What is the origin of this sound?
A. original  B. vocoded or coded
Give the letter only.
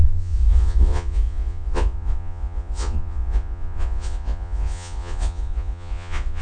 B